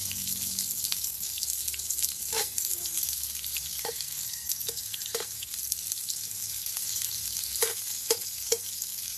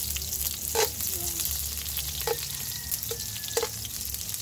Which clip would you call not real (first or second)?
first